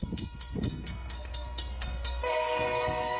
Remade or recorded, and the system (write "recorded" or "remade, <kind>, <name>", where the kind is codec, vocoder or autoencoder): remade, codec, SNAC